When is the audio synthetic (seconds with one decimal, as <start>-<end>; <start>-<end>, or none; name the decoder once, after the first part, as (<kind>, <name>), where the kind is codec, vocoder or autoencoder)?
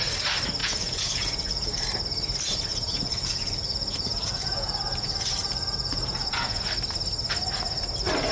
0.6-1.8 (vocoder, Vocos); 2.7-6.6